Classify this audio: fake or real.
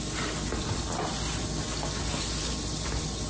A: real